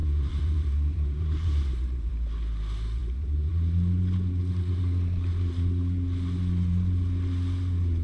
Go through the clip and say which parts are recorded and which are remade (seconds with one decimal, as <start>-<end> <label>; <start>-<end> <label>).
0.0-2.1 remade; 2.1-3.0 recorded; 3.0-3.5 remade; 3.5-8.0 recorded

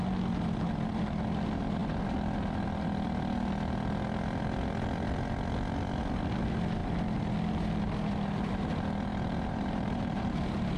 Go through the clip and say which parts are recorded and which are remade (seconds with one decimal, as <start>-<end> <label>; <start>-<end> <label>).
0.0-9.1 recorded; 9.1-10.8 remade

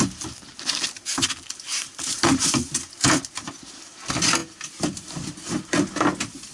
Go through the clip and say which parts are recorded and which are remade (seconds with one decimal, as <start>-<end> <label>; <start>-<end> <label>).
0.0-1.7 recorded; 1.7-3.2 remade; 3.2-6.5 recorded

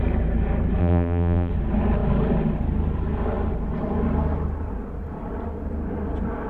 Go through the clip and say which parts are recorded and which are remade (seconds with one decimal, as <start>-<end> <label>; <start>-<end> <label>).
0.0-0.8 recorded; 0.8-1.5 remade; 1.5-6.5 recorded

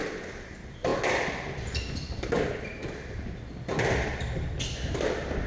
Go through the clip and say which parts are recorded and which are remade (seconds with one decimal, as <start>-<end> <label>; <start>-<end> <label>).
0.0-5.5 recorded

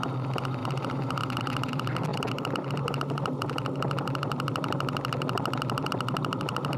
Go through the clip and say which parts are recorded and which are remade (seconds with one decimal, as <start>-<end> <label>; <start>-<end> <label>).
0.0-6.8 recorded